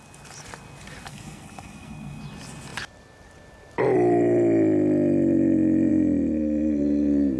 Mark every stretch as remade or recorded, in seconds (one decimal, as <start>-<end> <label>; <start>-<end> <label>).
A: 0.0-1.1 recorded; 1.1-2.2 remade; 2.2-7.4 recorded